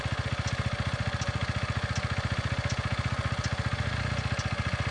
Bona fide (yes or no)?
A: yes